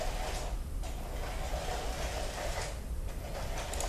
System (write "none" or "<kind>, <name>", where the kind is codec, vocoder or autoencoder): none